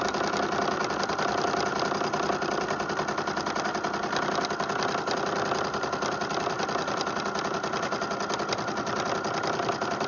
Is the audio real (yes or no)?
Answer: yes